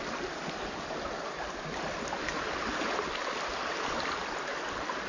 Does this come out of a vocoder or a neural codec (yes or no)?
no